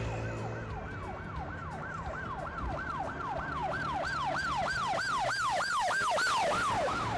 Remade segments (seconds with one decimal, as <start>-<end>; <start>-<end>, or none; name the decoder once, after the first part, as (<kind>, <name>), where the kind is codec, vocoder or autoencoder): 1.6-3.0 (vocoder, BigVGAN v2); 3.6-5.7

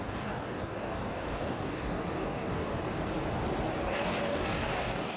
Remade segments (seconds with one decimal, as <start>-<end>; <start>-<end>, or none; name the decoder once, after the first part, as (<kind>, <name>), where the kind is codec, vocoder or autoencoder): 0.0-2.7 (codec, DAC); 3.8-5.2